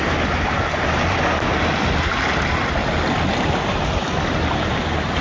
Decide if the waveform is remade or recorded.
recorded